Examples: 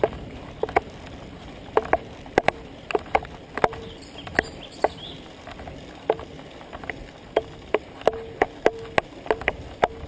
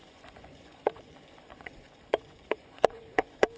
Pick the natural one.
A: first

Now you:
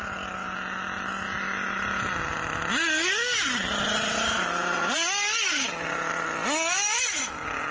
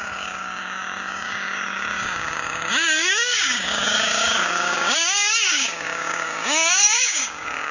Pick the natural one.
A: first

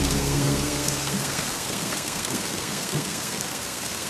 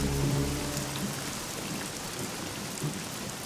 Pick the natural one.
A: second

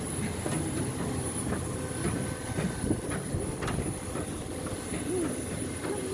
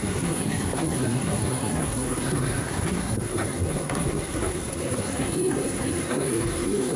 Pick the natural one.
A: first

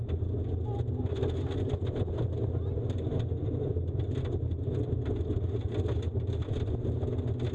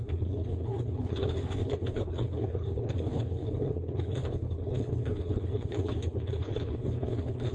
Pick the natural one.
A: first